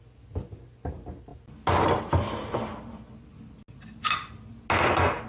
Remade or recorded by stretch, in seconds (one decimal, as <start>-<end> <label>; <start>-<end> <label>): 0.0-5.3 recorded